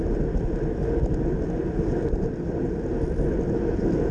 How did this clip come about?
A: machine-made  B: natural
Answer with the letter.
B